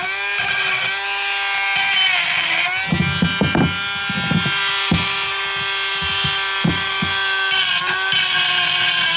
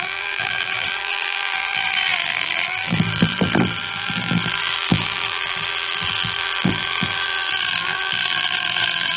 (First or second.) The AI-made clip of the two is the second